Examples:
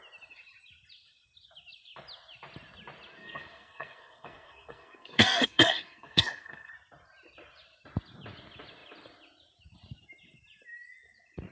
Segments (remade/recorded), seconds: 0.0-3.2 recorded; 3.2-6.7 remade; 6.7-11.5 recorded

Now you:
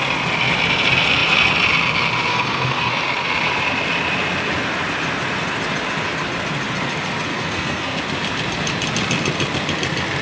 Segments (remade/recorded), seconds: 0.0-2.3 recorded; 2.3-2.9 remade; 2.9-7.3 recorded; 7.3-8.0 remade; 8.0-10.2 recorded

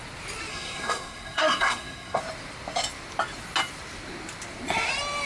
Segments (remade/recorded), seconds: 0.0-0.5 recorded; 0.5-2.2 remade; 2.2-5.3 recorded

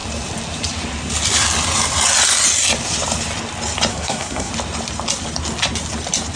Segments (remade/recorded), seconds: 0.0-3.9 recorded; 3.9-4.5 remade; 4.5-6.4 recorded